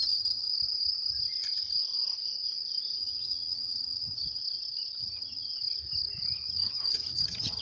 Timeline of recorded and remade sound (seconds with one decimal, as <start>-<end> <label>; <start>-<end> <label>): 0.0-0.5 remade; 0.5-3.0 recorded; 3.0-4.4 remade; 4.4-5.0 recorded; 5.0-5.5 remade; 5.5-6.5 recorded; 6.5-7.6 remade

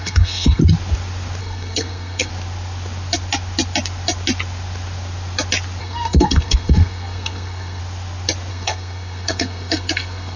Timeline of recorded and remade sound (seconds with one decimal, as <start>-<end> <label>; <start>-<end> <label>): 0.0-0.6 remade; 0.6-1.4 recorded; 1.4-2.3 remade; 2.3-5.8 recorded; 5.8-7.8 remade; 7.8-8.5 recorded; 8.5-10.4 remade

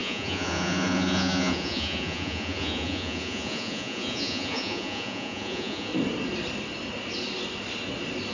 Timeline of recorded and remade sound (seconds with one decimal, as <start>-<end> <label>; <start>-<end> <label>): 0.0-5.9 remade; 5.9-8.3 recorded

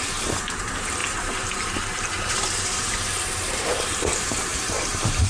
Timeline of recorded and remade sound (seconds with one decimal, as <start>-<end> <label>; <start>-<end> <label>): 0.0-5.3 remade

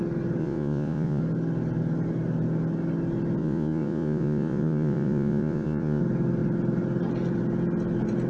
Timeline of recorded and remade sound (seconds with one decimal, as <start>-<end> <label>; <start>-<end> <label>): 0.0-0.4 recorded; 0.4-1.2 remade; 1.2-3.4 recorded; 3.4-6.0 remade; 6.0-8.3 recorded

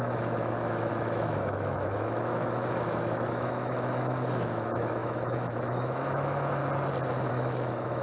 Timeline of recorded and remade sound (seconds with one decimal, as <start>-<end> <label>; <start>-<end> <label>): 0.0-6.6 remade; 6.6-7.3 recorded; 7.3-8.0 remade